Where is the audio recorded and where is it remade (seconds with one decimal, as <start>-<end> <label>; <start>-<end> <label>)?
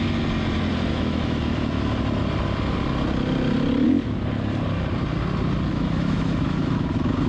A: 0.0-0.9 recorded; 0.9-2.0 remade; 2.0-5.7 recorded; 5.7-7.3 remade